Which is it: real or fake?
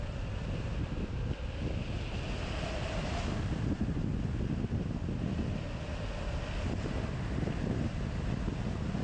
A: real